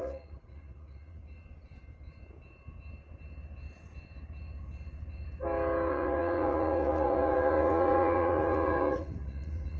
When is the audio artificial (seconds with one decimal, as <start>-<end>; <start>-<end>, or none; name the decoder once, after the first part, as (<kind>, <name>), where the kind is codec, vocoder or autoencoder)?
0.0-1.2 (vocoder, Vocos); 5.9-9.8